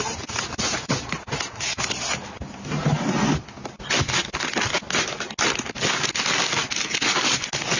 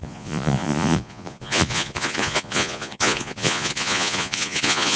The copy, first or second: second